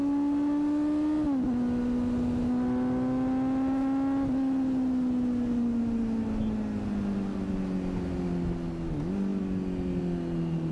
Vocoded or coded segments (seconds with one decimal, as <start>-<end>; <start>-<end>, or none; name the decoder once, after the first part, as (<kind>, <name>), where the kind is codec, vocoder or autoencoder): none